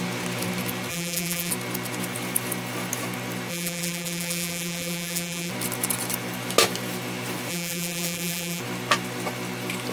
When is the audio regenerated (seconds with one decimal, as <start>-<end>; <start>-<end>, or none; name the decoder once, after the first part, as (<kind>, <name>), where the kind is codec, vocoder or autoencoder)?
0.9-1.5 (vocoder, BigVGAN v2); 3.5-5.5; 7.5-8.6